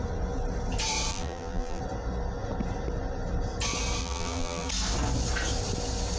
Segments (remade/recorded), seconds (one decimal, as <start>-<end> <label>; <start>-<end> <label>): 0.0-1.1 recorded; 1.1-1.8 remade; 1.8-4.0 recorded; 4.0-4.7 remade; 4.7-6.2 recorded

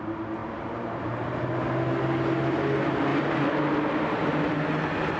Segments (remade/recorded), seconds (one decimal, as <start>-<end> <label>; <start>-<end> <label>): 0.0-0.4 recorded; 0.4-1.4 remade; 1.4-3.1 recorded; 3.1-4.3 remade; 4.3-5.2 recorded

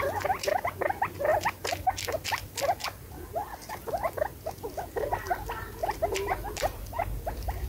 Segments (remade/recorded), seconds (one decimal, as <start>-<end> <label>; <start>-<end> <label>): 0.0-5.8 recorded; 5.8-6.8 remade; 6.8-7.7 recorded

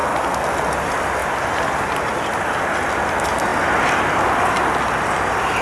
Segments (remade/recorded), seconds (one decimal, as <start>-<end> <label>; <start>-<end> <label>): 0.0-1.2 recorded; 1.2-2.6 remade; 2.6-5.6 recorded

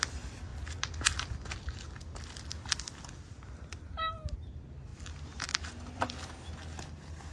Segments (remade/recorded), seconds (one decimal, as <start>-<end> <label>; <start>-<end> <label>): 0.0-4.9 recorded; 4.9-6.5 remade; 6.5-7.3 recorded

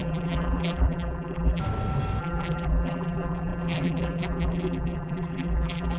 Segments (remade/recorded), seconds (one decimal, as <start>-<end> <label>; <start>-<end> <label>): 0.0-1.6 remade; 1.6-2.2 recorded; 2.2-6.0 remade

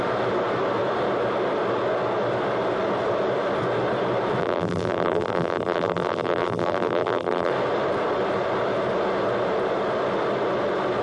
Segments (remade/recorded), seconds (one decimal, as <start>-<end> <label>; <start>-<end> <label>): 0.0-4.4 recorded; 4.4-7.5 remade; 7.5-11.0 recorded